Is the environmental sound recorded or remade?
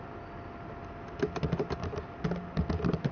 recorded